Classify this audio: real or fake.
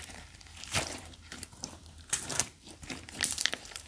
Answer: fake